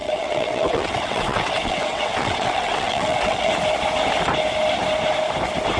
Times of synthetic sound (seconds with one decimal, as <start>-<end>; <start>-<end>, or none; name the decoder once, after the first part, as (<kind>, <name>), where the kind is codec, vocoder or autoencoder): 0.0-3.5 (vocoder, WaveNeXt)